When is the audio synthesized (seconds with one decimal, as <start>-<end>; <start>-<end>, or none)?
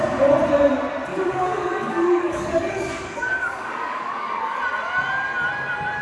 1.1-4.6